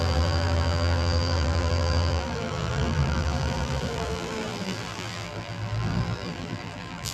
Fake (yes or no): yes